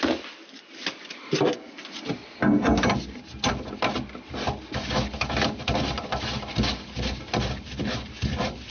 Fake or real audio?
real